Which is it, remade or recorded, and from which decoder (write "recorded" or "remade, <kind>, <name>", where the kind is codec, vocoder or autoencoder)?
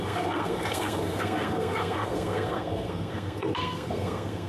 remade, codec, SNAC